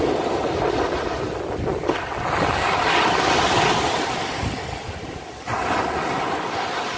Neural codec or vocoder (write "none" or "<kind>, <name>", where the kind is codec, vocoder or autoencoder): none